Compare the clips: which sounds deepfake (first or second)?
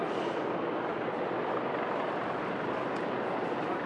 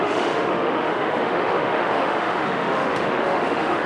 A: second